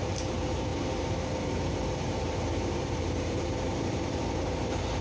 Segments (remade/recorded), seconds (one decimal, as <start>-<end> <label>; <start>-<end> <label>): 0.0-5.0 remade